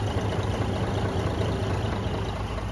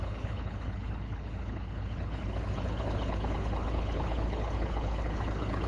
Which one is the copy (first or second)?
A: second